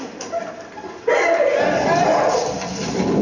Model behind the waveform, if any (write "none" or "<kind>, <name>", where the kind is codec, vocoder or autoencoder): vocoder, BigVGAN v2